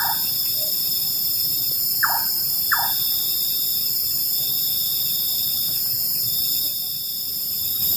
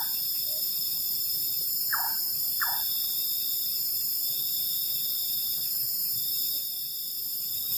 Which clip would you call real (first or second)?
first